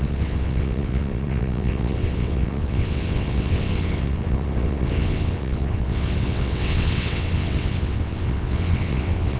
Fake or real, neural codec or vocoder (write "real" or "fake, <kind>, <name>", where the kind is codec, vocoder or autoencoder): fake, vocoder, WaveNeXt